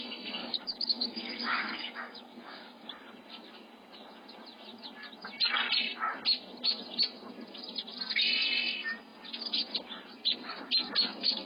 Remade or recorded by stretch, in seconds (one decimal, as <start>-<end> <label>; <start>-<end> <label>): 0.0-0.4 recorded; 0.4-2.9 remade; 2.9-11.5 recorded